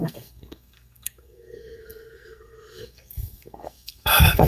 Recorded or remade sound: remade